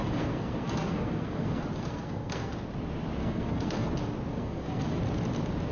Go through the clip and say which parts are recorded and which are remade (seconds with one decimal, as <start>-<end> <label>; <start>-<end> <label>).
0.0-2.5 remade; 2.5-3.2 recorded; 3.2-3.9 remade; 3.9-4.3 recorded; 4.3-5.0 remade; 5.0-5.7 recorded